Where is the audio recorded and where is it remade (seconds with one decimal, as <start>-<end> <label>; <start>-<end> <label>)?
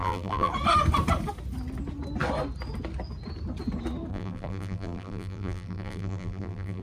0.0-0.5 remade; 0.5-4.1 recorded; 4.1-6.8 remade